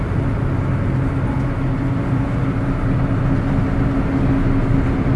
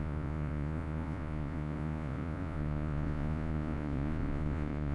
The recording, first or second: first